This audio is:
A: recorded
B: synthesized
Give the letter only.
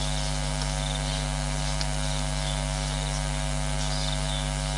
A